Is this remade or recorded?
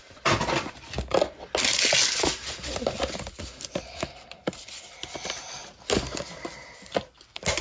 recorded